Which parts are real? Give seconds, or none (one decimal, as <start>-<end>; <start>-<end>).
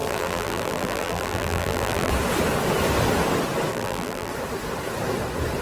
2.1-3.7; 4.3-5.6